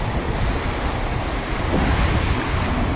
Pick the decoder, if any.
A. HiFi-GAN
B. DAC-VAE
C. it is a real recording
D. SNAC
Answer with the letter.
C